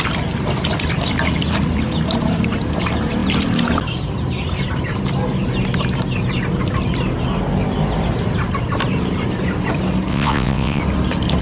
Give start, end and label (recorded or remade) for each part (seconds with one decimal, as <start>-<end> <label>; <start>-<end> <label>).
0.0-10.1 recorded; 10.1-10.8 remade; 10.8-11.4 recorded